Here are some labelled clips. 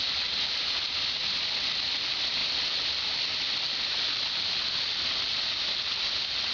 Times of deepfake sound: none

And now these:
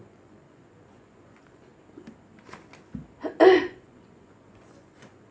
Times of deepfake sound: 0.0-1.7 (vocoder, Vocos); 3.6-5.3

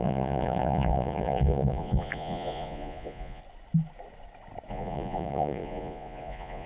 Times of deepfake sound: 0.0-3.4 (vocoder, Vocos); 4.7-6.7

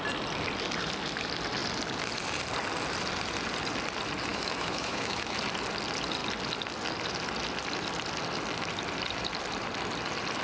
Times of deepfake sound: 4.3-5.4 (autoencoder, DAC-VAE)

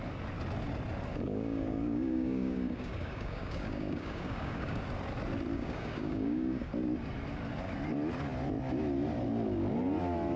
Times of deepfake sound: 1.1-4.8 (codec, DAC); 5.5-6.7

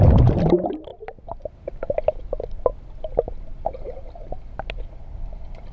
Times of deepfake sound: none

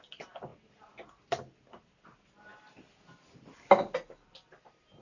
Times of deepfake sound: none

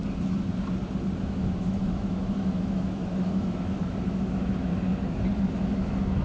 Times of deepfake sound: 1.2-4.7 (autoencoder, DAC-VAE); 5.5-6.2